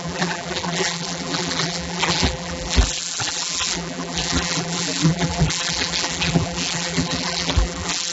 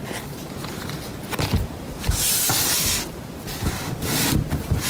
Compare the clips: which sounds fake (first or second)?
first